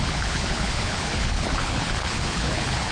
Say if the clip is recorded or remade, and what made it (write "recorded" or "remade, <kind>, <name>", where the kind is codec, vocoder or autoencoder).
remade, codec, HILCodec